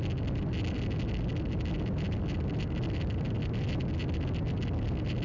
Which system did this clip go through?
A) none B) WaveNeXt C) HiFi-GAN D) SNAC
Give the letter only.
A